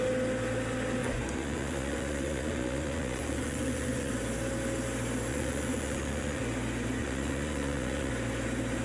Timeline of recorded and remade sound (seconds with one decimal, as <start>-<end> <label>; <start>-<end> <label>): 0.0-1.0 recorded; 1.0-4.1 remade; 4.1-5.3 recorded; 5.3-6.4 remade; 6.4-7.0 recorded; 7.0-8.1 remade; 8.1-8.8 recorded